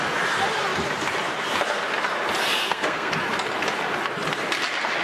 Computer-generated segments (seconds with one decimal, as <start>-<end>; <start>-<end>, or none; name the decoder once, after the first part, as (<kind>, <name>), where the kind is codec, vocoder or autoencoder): 2.6-3.1 (codec, SNAC)